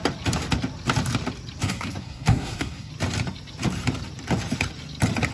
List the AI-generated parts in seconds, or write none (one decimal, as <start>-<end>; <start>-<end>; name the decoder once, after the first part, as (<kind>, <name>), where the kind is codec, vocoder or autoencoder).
1.6-2.9 (codec, SNAC)